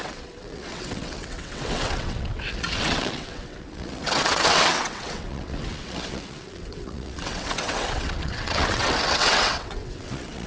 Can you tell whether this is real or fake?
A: fake